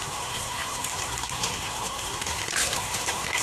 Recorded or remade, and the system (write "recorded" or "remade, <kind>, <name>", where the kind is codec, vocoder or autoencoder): remade, codec, SNAC